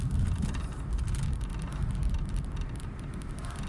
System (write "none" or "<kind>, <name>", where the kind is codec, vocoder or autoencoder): none